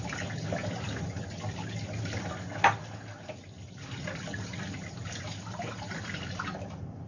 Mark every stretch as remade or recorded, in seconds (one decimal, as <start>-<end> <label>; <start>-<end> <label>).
0.0-7.1 recorded